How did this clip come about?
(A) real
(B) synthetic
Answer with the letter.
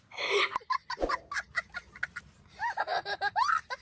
A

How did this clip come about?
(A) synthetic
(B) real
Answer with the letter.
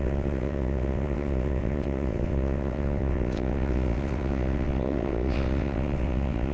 A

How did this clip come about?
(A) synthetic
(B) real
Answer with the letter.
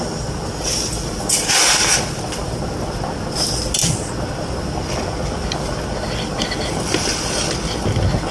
B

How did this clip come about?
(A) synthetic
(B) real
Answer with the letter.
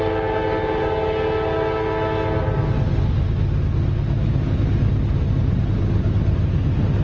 B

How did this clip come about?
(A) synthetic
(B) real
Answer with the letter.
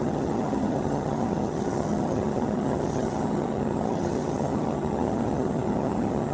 A